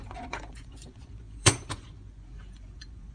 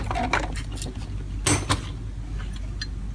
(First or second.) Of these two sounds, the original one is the second